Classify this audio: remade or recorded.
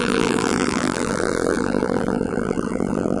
remade